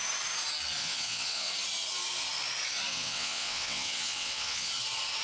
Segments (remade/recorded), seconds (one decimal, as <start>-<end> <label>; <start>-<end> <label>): 0.0-0.8 recorded; 0.8-1.5 remade; 1.5-2.9 recorded; 2.9-4.7 remade; 4.7-5.2 recorded